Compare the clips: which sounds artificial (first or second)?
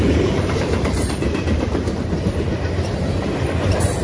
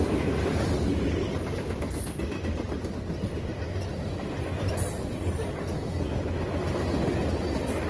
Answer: first